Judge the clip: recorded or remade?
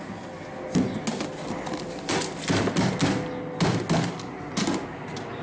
recorded